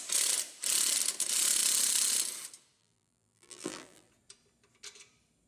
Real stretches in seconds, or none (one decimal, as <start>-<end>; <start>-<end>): 0.0-2.8; 4.1-5.5